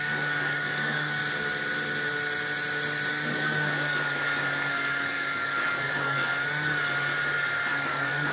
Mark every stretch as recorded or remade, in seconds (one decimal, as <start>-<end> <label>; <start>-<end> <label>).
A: 0.0-1.2 remade; 1.2-3.1 recorded; 3.1-6.3 remade; 6.3-7.7 recorded; 7.7-8.3 remade